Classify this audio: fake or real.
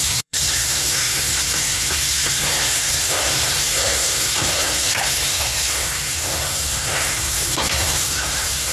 fake